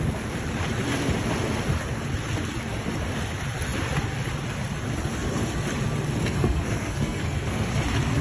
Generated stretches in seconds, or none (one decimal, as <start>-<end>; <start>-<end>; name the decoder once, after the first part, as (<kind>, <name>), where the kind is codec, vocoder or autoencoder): 6.2-7.7 (codec, SNAC)

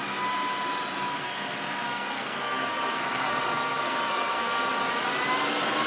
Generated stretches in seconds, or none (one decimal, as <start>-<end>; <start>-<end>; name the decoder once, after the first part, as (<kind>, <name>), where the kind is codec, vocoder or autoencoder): 1.2-4.7 (codec, SNAC)